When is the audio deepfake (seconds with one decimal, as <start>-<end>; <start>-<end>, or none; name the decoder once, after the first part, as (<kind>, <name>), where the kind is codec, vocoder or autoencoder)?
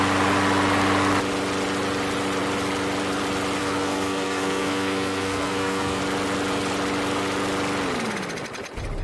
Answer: 3.6-6.0 (codec, SNAC)